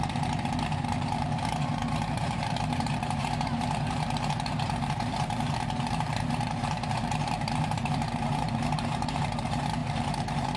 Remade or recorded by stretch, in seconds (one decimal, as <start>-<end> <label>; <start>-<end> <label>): 0.0-10.6 remade